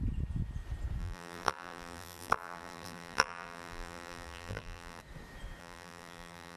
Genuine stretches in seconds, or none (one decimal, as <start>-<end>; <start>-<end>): 0.0-1.0; 5.0-5.6